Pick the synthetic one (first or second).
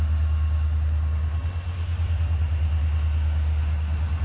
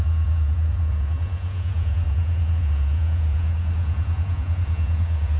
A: second